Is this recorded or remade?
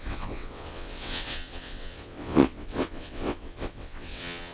remade